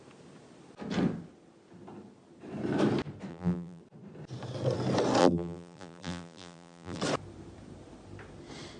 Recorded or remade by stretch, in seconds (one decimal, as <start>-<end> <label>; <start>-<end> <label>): 0.0-3.3 recorded; 3.3-3.8 remade; 3.8-5.2 recorded; 5.2-7.0 remade; 7.0-8.8 recorded